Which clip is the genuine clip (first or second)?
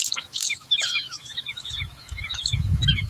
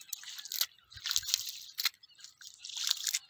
second